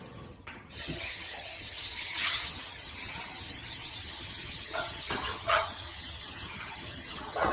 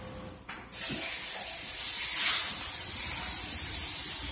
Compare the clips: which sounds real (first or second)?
second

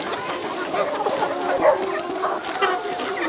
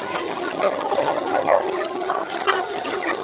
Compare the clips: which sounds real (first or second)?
first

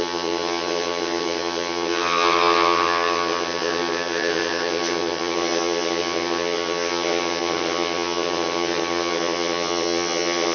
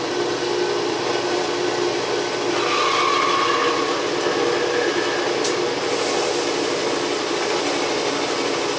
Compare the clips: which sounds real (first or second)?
second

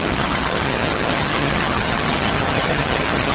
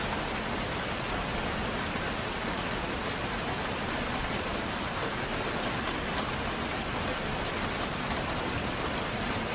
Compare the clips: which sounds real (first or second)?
second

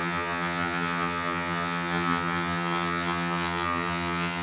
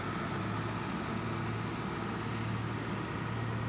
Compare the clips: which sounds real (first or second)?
second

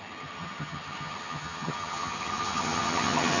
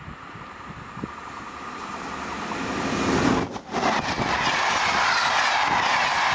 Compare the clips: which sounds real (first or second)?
second